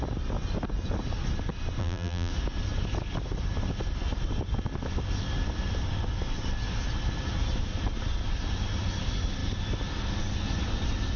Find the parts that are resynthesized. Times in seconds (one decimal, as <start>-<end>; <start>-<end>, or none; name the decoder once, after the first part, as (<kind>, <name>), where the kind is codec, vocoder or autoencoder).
1.8-2.3 (vocoder, BigVGAN v2)